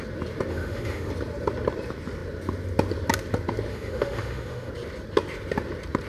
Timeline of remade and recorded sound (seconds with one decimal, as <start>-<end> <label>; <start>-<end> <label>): 0.0-0.5 recorded; 0.5-1.1 remade; 1.1-3.7 recorded; 3.7-4.7 remade; 4.7-6.1 recorded